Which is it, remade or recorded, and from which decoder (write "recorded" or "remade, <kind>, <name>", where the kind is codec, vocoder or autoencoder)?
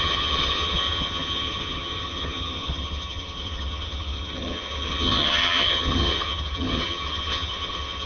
remade, vocoder, HiFi-GAN